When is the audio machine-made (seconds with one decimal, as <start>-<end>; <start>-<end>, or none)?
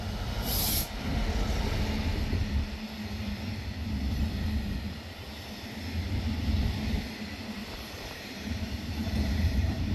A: 7.6-9.9